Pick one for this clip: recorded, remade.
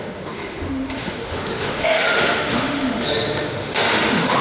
remade